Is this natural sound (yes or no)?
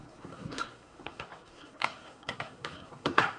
no